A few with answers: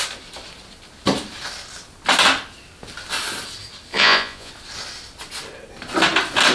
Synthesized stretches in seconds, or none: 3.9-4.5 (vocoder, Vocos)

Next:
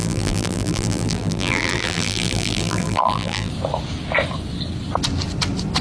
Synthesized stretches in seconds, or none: 0.0-3.5 (vocoder, BigVGAN v2)

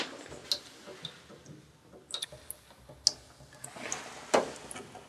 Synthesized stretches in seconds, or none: none

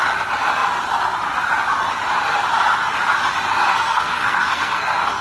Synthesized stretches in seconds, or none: 3.7-5.2 (codec, SNAC)

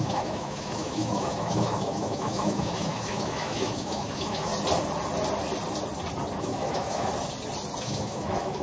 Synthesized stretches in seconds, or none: 0.0-4.5 (autoencoder, DAC-VAE); 6.4-7.1; 7.8-8.6